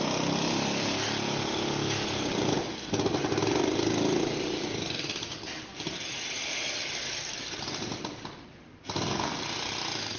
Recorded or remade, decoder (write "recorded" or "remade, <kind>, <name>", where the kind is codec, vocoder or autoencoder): recorded